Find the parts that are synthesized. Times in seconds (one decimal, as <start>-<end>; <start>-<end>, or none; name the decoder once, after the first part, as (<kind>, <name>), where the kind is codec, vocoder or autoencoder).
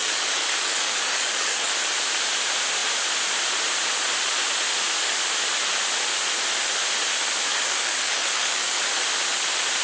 0.0-1.7 (codec, DAC); 7.5-8.8